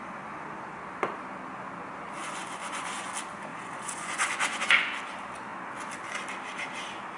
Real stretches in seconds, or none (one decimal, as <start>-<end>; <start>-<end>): 0.0-2.2; 3.1-3.5; 5.0-7.2